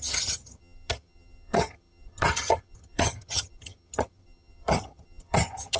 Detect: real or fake fake